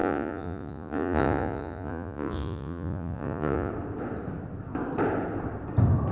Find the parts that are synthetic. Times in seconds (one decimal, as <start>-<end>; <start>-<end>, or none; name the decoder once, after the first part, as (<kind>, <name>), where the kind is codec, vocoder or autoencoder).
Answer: 0.0-3.7 (vocoder, Vocos)